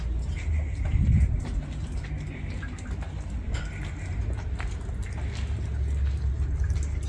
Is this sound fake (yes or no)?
no